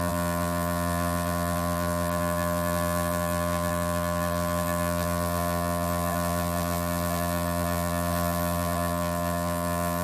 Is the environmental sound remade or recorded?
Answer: remade